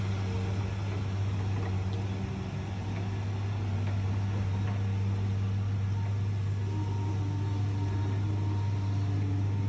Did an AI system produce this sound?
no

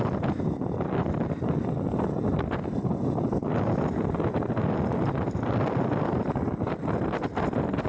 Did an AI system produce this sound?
no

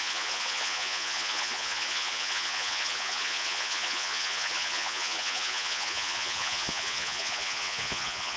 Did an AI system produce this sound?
yes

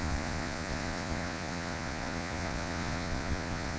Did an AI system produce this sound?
yes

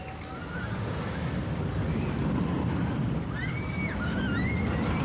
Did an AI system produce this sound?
no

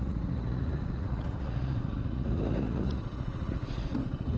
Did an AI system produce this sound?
yes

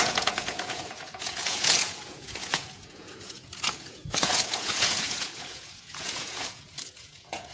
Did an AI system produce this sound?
yes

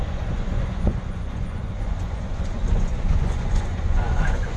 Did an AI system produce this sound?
yes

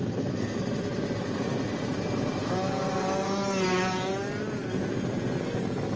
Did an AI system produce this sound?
no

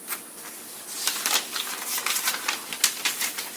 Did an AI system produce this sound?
no